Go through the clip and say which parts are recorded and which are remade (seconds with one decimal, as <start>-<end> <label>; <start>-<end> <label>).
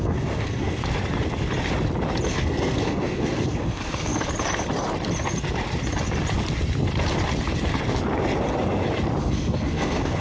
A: 0.0-0.8 remade; 0.8-2.3 recorded; 2.3-4.1 remade; 4.1-9.2 recorded; 9.2-10.2 remade